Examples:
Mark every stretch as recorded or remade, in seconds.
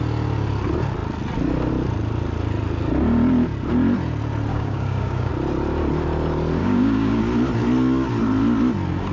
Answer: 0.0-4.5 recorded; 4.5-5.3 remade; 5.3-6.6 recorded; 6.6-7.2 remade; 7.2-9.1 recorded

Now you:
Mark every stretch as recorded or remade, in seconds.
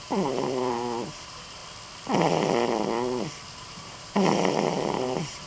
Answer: 0.0-1.6 remade; 1.6-3.5 recorded; 3.5-5.5 remade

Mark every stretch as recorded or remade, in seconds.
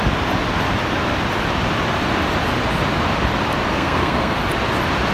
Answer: 0.0-3.7 recorded; 3.7-4.4 remade; 4.4-5.1 recorded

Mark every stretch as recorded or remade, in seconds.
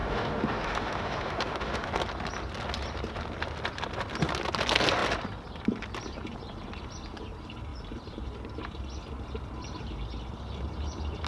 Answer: 0.0-1.9 remade; 1.9-11.3 recorded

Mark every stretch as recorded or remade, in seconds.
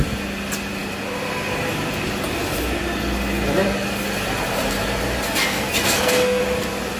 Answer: 0.0-5.4 recorded; 5.4-6.4 remade; 6.4-7.0 recorded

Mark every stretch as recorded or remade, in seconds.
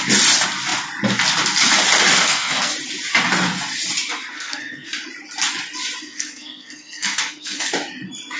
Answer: 0.0-2.1 recorded; 2.1-2.7 remade; 2.7-4.3 recorded; 4.3-4.9 remade; 4.9-6.0 recorded; 6.0-7.7 remade; 7.7-8.4 recorded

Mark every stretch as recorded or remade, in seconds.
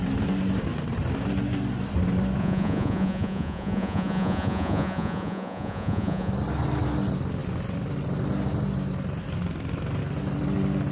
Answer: 0.0-2.4 recorded; 2.4-6.3 remade; 6.3-10.9 recorded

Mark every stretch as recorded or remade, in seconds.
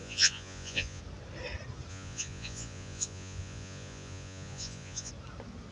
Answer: 0.0-1.0 remade; 1.0-1.9 recorded; 1.9-5.1 remade; 5.1-5.7 recorded